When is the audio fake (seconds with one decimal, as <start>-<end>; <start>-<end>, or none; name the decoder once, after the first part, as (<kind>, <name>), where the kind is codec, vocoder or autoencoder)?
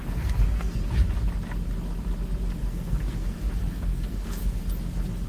0.0-0.9 (codec, SNAC); 2.6-4.6